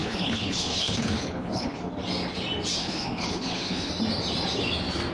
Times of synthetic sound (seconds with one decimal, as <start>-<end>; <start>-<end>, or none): 0.0-1.8; 2.8-3.9